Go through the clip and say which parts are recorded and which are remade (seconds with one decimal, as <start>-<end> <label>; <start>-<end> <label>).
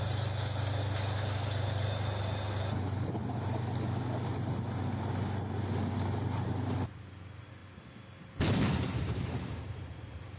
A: 0.0-10.4 recorded